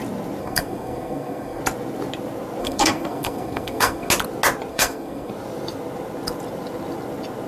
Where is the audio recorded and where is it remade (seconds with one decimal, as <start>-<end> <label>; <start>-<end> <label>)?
0.0-0.4 recorded; 0.4-1.6 remade; 1.6-2.6 recorded; 2.6-4.1 remade; 4.1-4.7 recorded; 4.7-5.3 remade; 5.3-7.5 recorded

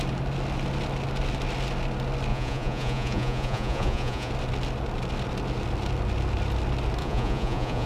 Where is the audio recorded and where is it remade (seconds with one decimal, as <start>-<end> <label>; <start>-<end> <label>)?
0.0-2.3 recorded; 2.3-4.3 remade; 4.3-7.0 recorded; 7.0-7.9 remade

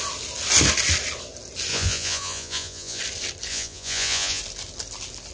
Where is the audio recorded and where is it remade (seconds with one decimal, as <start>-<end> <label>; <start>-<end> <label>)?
0.0-1.7 recorded; 1.7-3.0 remade; 3.0-3.5 recorded; 3.5-4.4 remade; 4.4-5.3 recorded

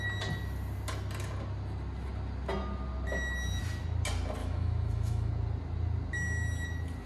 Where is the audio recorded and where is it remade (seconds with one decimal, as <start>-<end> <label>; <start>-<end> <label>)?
0.0-4.4 recorded; 4.4-5.3 remade; 5.3-7.1 recorded